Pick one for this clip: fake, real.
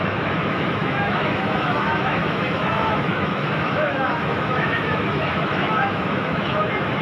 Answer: fake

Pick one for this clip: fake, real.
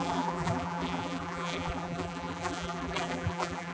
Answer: fake